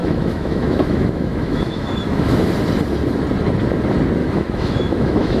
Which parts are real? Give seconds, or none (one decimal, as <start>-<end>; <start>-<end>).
2.5-4.2